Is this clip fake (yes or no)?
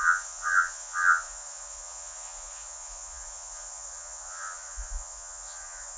yes